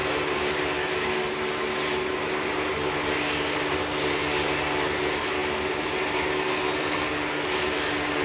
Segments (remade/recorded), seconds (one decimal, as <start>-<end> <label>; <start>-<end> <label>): 0.0-8.2 recorded